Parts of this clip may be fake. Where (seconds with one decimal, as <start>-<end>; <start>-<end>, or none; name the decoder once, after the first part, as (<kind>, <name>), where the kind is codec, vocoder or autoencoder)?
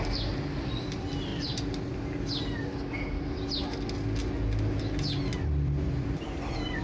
0.0-1.3 (vocoder, BigVGAN v2); 5.4-6.8